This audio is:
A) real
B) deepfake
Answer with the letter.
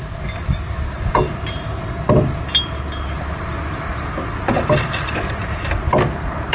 A